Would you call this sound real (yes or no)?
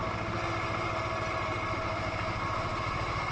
yes